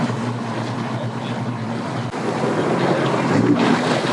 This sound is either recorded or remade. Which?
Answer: recorded